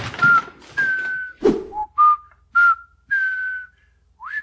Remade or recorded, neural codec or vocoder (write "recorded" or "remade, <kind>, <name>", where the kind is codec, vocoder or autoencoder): recorded